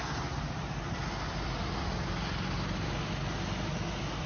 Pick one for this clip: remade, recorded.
recorded